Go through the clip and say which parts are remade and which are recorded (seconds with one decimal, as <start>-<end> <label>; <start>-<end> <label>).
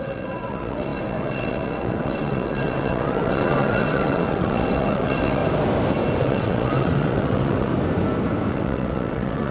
0.0-5.4 remade; 5.4-6.2 recorded; 6.2-7.7 remade; 7.7-8.5 recorded; 8.5-9.5 remade